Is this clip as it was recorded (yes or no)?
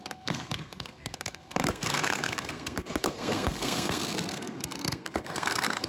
no